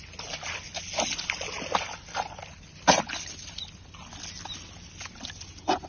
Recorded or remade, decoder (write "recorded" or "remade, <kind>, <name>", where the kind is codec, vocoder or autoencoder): recorded